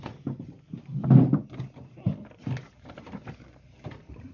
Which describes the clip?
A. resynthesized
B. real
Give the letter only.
B